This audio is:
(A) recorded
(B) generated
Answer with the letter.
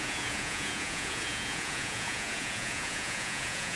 B